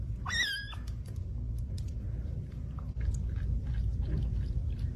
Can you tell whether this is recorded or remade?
remade